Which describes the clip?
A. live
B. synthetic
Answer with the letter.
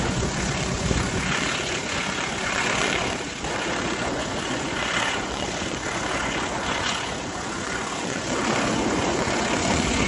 B